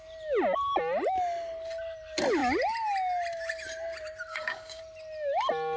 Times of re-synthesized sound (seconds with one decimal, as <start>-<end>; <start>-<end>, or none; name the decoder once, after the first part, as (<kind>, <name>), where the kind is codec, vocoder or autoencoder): 4.3-4.8 (codec, DAC)